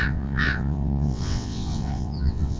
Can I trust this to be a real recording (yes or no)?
no